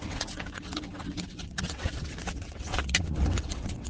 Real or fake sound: fake